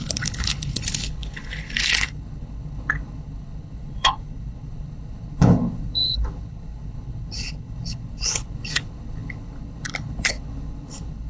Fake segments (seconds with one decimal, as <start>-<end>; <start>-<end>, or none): 0.0-11.3